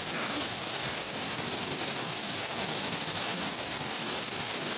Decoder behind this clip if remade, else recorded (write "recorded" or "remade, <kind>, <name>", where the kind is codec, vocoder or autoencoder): remade, codec, DAC